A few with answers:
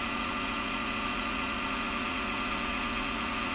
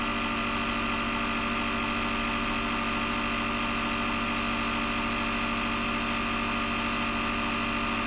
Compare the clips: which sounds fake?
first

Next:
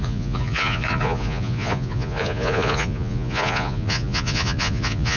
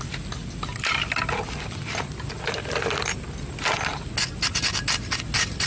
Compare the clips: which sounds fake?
first